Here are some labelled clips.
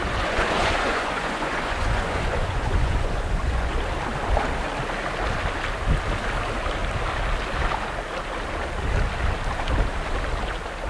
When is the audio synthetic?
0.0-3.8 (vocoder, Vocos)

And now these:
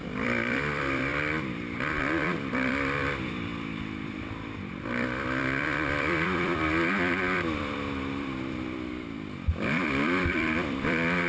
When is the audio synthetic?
0.0-11.3 (vocoder, BigVGAN v2)

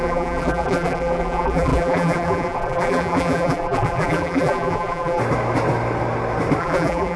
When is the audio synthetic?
0.0-5.2 (vocoder, BigVGAN v2); 6.6-7.2